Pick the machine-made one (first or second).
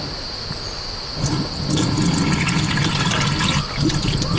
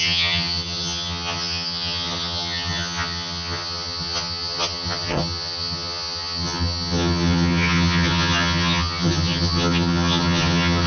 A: second